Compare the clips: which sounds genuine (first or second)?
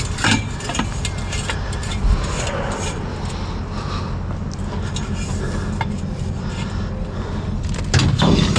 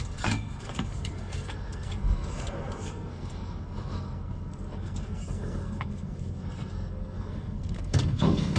first